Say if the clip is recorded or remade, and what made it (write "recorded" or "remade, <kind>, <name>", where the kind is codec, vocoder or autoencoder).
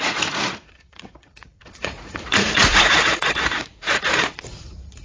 remade, vocoder, Vocos